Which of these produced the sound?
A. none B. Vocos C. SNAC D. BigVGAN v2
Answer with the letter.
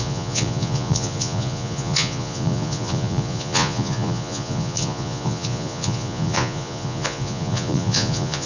B